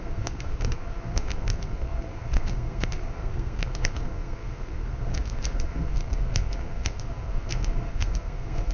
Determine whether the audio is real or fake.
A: fake